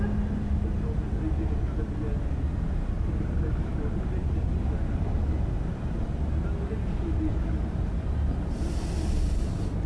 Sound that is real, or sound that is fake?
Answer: real